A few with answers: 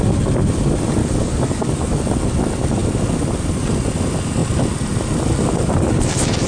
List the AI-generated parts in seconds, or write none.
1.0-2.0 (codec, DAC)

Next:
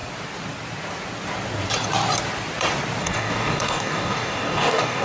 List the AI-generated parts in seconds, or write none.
3.0-5.0 (codec, DAC)

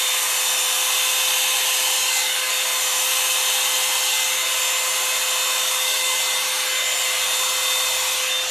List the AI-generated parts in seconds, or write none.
2.0-2.5 (codec, DAC); 5.6-6.2

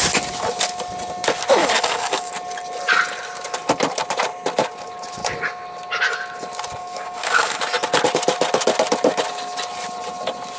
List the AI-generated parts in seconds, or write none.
1.6-2.3 (codec, DAC); 6.8-7.6

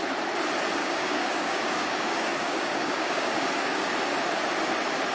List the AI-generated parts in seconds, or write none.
0.8-3.9 (codec, DAC)

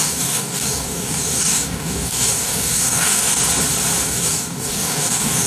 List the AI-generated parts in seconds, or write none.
0.0-3.4 (codec, DAC); 4.1-5.5

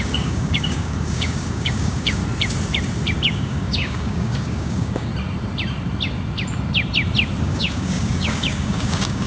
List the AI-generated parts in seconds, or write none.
0.0-2.2 (codec, DAC); 3.2-5.1; 7.4-9.3